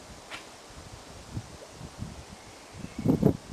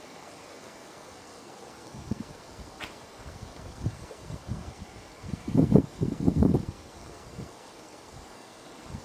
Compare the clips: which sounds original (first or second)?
first